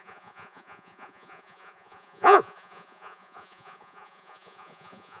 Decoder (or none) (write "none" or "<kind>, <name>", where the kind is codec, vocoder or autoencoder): vocoder, Vocos